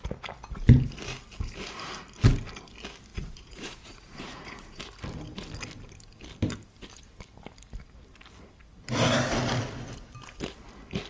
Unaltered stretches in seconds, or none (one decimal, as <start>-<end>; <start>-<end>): 0.0-3.1; 4.8-11.1